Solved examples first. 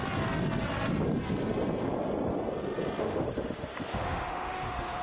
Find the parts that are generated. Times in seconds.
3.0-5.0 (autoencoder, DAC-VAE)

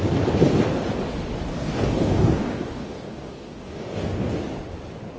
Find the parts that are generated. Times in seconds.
1.5-4.3 (codec, DAC)

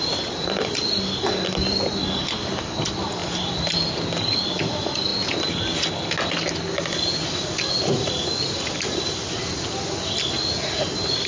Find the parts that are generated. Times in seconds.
none

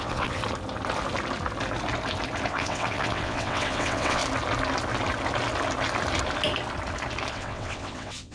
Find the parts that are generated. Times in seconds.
0.0-0.4 (vocoder, WaveNeXt); 2.5-4.2; 7.3-8.3

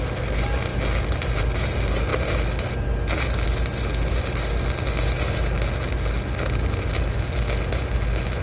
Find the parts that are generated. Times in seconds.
none

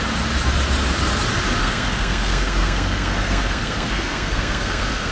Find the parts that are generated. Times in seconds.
1.6-5.1 (codec, SNAC)

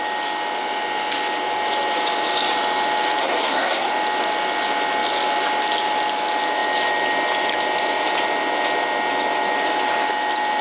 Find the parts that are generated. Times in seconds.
3.2-3.9 (codec, SNAC)

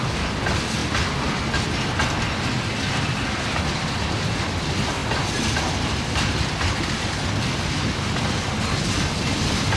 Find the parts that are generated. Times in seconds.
none